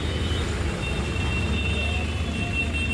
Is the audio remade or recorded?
recorded